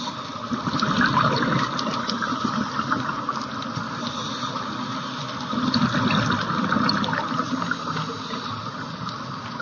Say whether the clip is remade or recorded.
recorded